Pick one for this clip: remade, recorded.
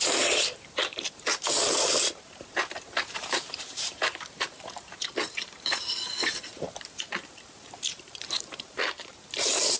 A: remade